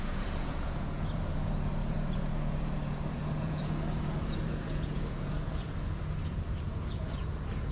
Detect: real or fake fake